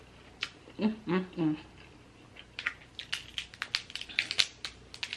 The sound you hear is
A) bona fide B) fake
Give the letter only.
A